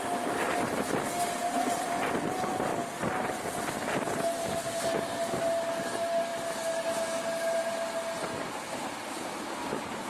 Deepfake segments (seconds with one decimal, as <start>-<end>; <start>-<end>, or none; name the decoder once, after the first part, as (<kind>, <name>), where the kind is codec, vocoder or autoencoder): none